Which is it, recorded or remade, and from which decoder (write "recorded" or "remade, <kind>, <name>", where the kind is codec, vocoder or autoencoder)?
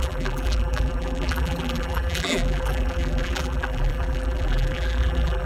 remade, vocoder, BigVGAN v2